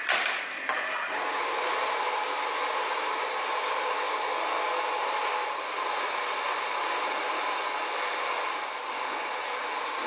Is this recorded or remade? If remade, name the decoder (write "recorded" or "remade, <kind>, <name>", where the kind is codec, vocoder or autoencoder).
recorded